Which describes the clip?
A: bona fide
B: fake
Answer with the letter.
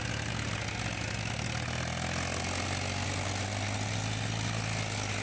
A